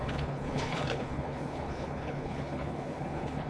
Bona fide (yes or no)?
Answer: no